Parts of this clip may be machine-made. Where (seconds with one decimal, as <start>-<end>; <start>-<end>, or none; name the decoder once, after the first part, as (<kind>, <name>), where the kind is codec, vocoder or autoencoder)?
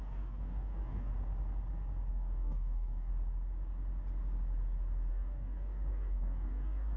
0.0-1.1 (codec, DAC); 2.1-3.1; 5.1-7.0